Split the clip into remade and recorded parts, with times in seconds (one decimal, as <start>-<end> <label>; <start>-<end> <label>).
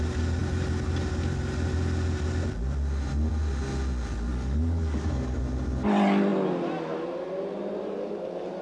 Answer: 0.0-4.3 recorded; 4.3-5.4 remade; 5.4-8.6 recorded